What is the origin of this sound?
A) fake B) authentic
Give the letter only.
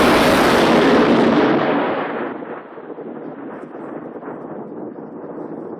B